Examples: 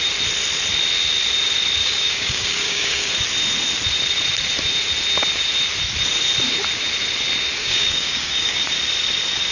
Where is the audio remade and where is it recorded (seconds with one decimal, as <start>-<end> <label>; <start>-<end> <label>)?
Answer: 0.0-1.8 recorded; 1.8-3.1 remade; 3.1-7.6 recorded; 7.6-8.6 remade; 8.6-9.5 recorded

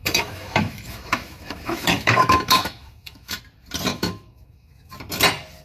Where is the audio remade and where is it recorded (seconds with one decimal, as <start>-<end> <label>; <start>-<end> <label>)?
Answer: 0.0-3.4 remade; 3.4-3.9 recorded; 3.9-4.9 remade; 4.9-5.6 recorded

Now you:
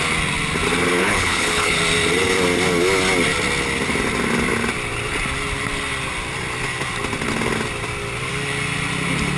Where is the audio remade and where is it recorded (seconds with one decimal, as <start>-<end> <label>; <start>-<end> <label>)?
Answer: 0.0-1.0 recorded; 1.0-1.8 remade; 1.8-9.4 recorded

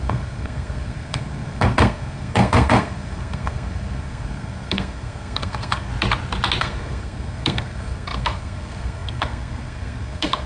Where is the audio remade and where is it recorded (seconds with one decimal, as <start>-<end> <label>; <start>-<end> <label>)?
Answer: 0.0-5.9 remade; 5.9-6.6 recorded; 6.6-10.5 remade